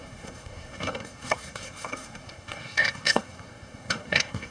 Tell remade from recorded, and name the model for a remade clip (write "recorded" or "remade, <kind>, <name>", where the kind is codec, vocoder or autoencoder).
remade, codec, SNAC